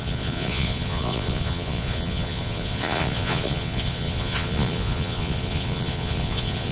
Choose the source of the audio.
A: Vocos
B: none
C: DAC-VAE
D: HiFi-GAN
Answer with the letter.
A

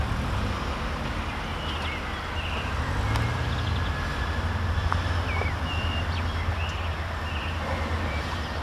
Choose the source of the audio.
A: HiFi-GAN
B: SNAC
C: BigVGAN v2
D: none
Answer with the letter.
D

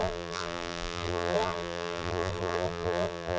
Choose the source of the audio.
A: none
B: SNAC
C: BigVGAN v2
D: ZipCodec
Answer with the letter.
C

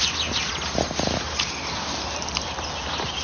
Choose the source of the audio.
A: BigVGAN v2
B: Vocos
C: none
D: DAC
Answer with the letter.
C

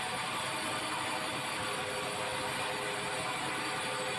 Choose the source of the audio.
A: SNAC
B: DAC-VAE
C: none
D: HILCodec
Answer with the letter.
C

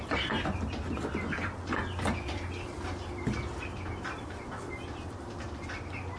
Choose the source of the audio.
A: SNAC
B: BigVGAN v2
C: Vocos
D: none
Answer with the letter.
D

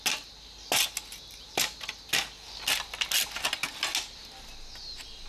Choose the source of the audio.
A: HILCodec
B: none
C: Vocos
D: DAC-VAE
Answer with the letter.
B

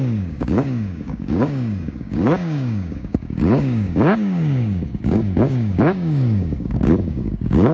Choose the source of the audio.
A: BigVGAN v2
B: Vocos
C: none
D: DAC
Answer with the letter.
D